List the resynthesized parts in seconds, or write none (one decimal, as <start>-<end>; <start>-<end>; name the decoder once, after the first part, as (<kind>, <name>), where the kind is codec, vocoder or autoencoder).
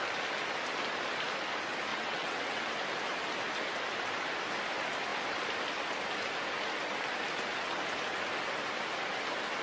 1.9-2.7 (vocoder, WaveNeXt)